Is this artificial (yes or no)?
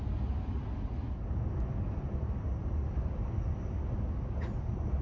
no